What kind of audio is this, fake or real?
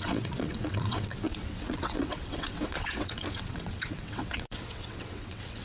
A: fake